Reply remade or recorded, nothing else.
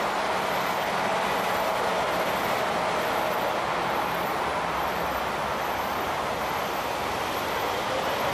recorded